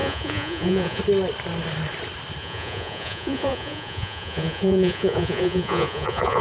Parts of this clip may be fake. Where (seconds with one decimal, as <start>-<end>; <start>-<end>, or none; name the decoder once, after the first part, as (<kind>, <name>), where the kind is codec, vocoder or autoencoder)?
0.0-1.0 (vocoder, Vocos); 2.4-6.4